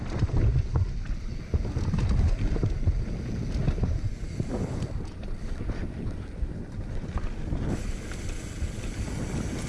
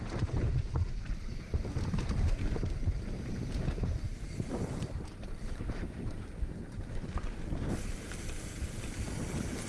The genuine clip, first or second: first